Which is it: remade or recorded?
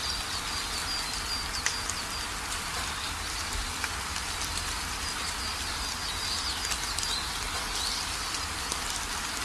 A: recorded